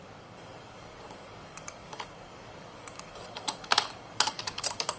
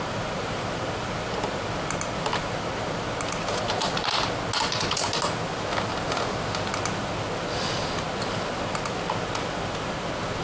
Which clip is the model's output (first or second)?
first